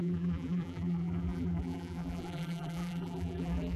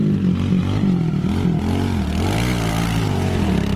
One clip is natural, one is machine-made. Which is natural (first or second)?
second